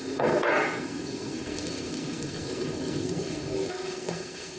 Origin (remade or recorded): remade